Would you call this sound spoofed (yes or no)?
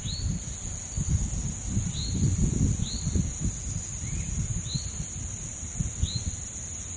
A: no